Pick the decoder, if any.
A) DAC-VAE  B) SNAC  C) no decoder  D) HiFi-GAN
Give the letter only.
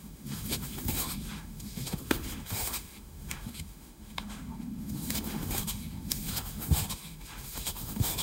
A